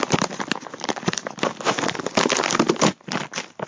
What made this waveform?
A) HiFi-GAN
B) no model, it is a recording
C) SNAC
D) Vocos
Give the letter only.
B